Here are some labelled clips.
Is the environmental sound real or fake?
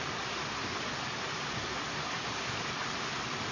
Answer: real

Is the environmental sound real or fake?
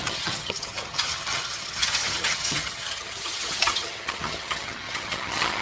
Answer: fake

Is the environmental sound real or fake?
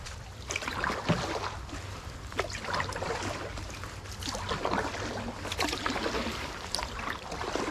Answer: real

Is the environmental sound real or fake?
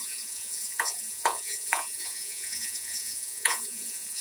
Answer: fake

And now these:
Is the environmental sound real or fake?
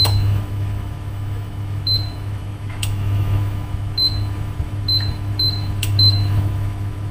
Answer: fake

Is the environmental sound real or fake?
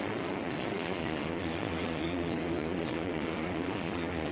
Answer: fake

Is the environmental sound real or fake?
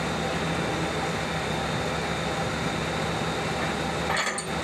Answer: real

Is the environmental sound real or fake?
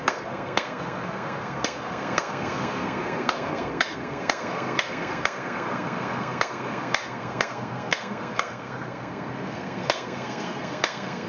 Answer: fake